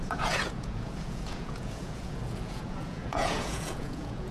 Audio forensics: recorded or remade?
remade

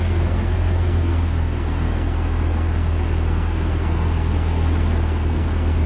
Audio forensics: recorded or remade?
remade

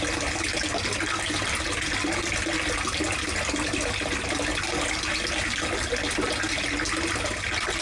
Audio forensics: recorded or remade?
recorded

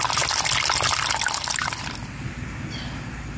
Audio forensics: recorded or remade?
recorded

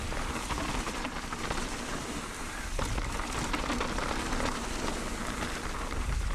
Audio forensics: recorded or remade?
recorded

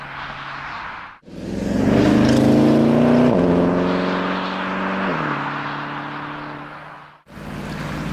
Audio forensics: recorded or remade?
recorded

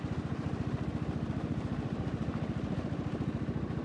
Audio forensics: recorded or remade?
recorded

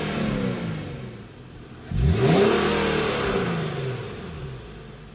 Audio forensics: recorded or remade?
recorded